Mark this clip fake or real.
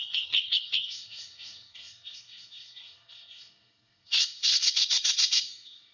fake